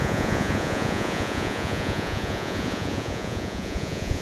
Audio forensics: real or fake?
fake